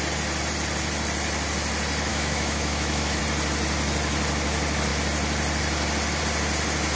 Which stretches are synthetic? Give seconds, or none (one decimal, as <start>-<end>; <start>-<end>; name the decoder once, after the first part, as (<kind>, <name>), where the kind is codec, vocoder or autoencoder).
2.1-3.2 (autoencoder, DAC-VAE)